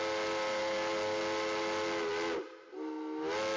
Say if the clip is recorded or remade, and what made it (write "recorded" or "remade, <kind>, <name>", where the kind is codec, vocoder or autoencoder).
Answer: recorded